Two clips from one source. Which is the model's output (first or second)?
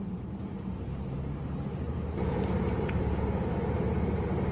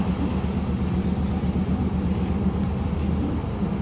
first